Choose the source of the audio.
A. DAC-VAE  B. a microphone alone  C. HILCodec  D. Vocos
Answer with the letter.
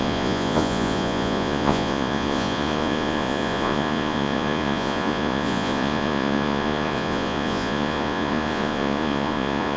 D